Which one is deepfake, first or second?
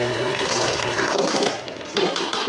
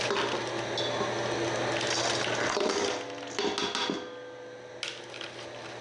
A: first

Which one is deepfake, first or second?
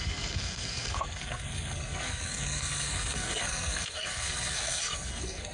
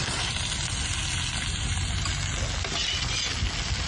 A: first